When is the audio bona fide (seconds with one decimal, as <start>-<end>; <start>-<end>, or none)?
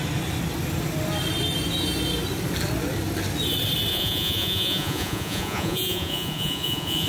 0.0-3.9